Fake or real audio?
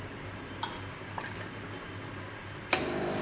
real